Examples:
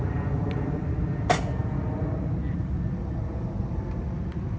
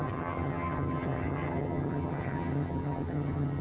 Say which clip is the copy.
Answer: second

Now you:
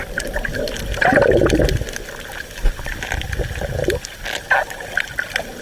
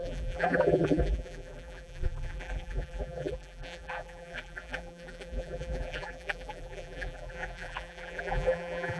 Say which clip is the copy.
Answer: second